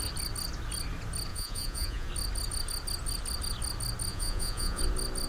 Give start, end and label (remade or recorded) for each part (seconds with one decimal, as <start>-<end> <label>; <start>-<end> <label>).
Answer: 0.0-1.3 recorded; 1.3-2.1 remade; 2.1-4.1 recorded; 4.1-4.8 remade; 4.8-5.3 recorded